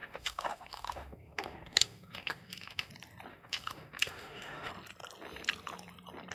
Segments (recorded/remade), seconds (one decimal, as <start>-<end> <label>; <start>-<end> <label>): 0.0-2.9 remade; 2.9-3.3 recorded; 3.3-4.7 remade; 4.7-6.3 recorded